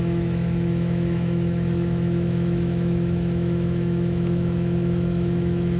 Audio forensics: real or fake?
fake